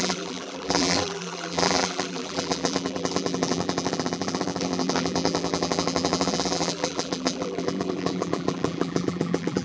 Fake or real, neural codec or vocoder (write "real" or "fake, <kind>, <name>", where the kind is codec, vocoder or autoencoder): fake, vocoder, BigVGAN v2